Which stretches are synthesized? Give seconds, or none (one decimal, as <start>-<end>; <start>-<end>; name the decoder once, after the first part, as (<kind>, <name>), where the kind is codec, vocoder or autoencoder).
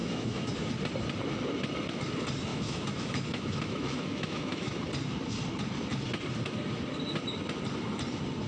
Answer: 0.0-0.7 (autoencoder, DAC-VAE); 2.5-4.8